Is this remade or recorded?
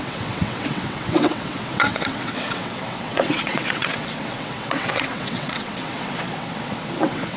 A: remade